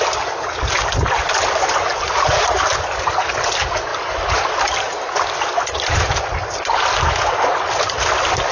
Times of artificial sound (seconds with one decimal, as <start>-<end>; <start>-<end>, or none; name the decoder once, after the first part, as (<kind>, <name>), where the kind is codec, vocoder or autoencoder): none